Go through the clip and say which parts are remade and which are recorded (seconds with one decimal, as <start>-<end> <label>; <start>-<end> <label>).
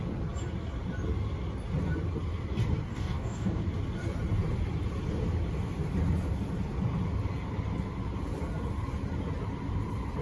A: 0.0-2.9 recorded; 2.9-3.6 remade; 3.6-10.2 recorded